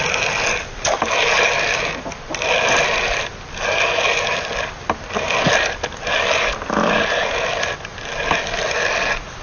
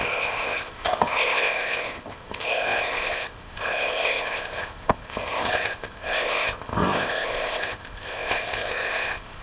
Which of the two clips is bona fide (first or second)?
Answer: first